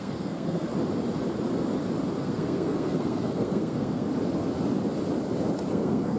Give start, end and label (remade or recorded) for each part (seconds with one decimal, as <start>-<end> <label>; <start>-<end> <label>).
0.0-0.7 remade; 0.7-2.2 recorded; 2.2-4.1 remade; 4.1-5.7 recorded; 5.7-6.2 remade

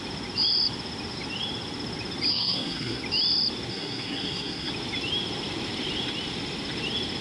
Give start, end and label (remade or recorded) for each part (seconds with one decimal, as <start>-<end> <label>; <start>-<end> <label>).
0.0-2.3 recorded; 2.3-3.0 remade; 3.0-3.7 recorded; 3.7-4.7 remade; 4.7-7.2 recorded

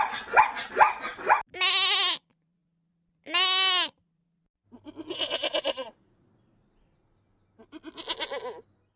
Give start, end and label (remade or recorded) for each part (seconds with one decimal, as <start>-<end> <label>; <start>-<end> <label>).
0.0-9.0 recorded